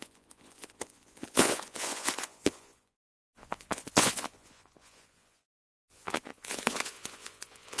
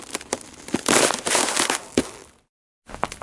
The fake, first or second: first